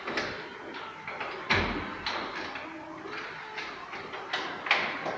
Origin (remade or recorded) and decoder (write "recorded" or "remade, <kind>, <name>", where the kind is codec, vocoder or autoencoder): recorded